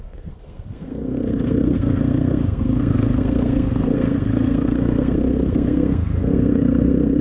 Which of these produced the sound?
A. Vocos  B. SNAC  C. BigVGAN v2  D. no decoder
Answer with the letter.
B